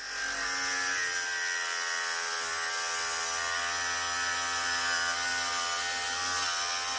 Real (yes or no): yes